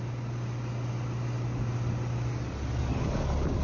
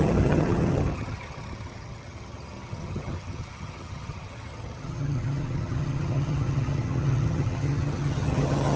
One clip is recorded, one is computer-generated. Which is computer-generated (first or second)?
second